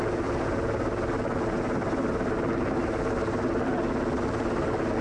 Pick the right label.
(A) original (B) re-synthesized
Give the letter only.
A